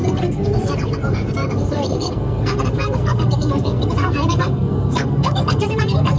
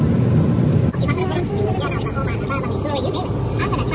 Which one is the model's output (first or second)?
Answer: first